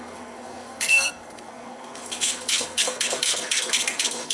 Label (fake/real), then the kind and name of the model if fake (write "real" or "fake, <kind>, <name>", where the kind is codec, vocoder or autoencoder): fake, codec, SNAC